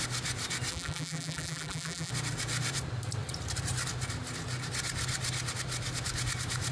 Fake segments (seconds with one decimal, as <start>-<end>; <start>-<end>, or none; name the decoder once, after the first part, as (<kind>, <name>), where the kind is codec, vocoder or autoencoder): 0.7-2.1 (vocoder, BigVGAN v2)